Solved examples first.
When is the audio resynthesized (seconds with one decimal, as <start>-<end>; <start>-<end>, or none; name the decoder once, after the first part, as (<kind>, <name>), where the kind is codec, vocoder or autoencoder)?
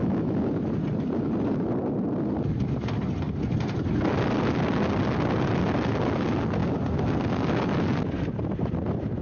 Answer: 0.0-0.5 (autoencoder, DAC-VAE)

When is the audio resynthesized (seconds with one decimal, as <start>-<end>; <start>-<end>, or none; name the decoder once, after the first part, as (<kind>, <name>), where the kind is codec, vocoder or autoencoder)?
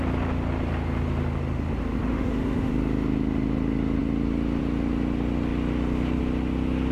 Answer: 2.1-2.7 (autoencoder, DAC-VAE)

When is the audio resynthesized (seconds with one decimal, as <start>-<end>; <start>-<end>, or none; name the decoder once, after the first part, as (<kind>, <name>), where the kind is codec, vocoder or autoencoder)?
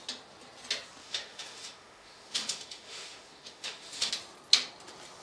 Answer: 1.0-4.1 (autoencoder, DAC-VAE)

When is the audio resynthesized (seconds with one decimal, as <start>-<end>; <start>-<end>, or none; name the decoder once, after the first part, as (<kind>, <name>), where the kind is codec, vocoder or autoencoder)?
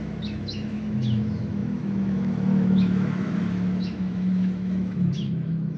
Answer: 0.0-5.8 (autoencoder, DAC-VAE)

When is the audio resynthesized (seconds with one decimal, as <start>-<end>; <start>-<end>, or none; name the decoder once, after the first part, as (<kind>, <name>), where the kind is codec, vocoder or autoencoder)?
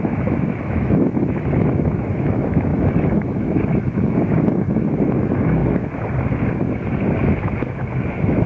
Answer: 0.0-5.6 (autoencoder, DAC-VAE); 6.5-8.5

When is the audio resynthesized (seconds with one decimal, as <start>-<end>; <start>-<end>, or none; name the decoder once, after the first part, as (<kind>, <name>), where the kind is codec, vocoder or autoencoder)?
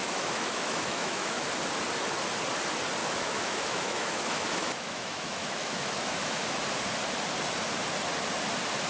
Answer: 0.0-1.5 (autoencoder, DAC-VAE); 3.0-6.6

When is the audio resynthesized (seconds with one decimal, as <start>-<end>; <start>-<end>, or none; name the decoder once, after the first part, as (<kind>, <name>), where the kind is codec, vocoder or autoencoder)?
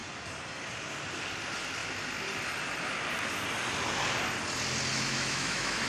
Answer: 4.9-5.9 (autoencoder, DAC-VAE)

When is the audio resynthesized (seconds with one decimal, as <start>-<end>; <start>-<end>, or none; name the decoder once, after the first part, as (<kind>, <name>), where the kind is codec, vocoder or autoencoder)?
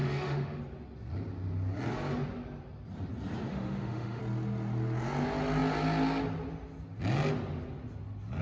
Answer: 0.0-0.6 (autoencoder, DAC-VAE); 3.5-4.2